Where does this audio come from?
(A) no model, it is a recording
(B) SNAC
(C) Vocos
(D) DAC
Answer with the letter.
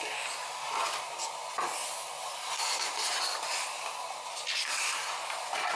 A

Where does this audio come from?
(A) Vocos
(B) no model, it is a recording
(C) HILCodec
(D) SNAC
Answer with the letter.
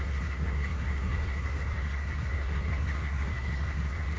D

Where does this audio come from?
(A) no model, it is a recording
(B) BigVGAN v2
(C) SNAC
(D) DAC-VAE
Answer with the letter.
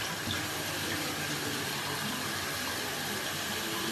B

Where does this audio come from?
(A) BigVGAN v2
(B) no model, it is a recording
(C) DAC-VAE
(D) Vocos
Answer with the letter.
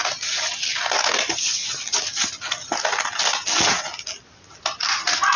B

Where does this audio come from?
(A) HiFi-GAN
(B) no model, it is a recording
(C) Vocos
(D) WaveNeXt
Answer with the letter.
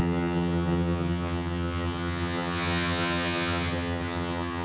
A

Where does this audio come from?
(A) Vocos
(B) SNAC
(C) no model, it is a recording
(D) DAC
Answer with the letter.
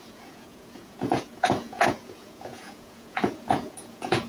A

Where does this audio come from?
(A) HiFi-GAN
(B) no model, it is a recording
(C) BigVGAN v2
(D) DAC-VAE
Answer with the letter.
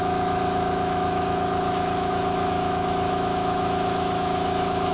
D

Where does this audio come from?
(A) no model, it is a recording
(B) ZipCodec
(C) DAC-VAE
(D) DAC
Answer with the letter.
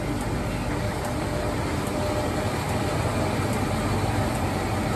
A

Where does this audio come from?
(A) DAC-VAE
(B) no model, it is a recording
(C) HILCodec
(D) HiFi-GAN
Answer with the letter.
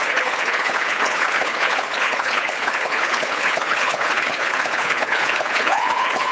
C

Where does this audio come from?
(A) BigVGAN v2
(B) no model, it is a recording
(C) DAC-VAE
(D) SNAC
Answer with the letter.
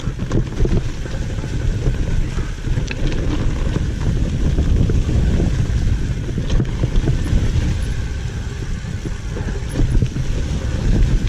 B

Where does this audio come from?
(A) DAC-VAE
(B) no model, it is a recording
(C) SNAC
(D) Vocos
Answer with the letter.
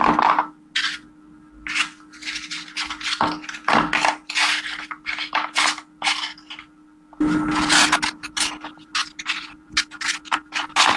B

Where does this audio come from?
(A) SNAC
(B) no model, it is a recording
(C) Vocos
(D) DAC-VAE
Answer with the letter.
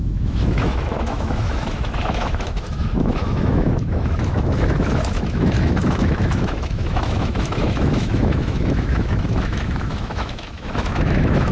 D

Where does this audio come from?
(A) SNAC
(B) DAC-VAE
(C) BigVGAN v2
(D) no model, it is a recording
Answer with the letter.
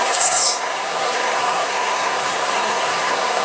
A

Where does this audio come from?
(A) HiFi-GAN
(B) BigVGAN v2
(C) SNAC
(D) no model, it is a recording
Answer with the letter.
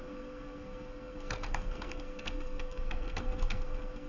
C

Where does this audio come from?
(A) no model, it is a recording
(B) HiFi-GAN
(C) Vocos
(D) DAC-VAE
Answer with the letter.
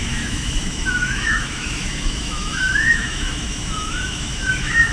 D